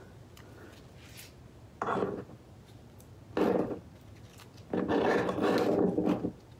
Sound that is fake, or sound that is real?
real